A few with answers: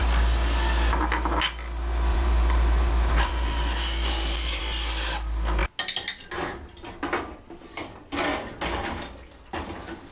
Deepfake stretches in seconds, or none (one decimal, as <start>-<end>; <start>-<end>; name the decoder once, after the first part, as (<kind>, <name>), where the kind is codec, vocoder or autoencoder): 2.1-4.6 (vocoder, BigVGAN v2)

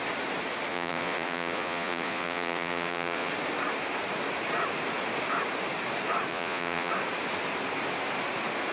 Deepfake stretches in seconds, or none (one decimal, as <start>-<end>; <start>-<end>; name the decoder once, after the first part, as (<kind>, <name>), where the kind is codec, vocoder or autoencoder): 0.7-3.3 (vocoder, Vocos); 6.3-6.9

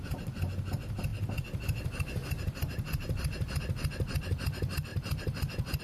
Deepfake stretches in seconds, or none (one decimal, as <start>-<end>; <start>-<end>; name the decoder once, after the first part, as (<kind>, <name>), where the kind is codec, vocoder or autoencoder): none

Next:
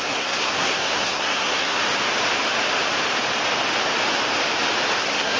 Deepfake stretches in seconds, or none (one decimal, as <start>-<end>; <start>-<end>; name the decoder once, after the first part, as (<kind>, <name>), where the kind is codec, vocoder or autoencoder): 0.0-1.8 (codec, SNAC); 5.0-5.4

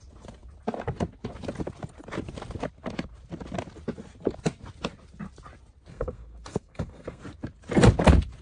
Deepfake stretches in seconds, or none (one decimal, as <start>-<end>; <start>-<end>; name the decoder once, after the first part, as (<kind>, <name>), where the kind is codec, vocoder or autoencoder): 5.9-7.2 (codec, SNAC)

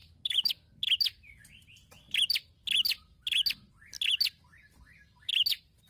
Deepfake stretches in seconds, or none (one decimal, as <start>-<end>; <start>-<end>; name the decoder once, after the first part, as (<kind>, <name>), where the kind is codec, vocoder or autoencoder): none